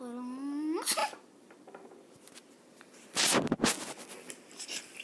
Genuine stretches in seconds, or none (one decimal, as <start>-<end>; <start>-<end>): 0.0-1.0; 1.9-2.4; 3.3-5.0